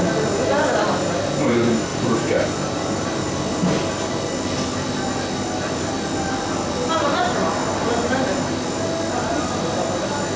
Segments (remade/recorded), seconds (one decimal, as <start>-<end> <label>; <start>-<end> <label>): 0.0-1.9 recorded; 1.9-3.2 remade; 3.2-10.4 recorded